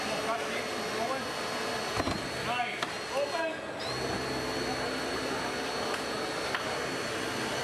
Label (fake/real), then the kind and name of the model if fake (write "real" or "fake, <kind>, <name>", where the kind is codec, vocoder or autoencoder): real